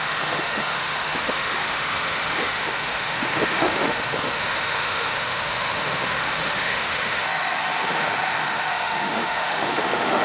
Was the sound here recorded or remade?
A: remade